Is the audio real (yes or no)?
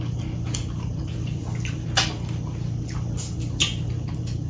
yes